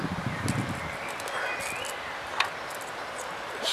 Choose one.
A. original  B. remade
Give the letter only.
A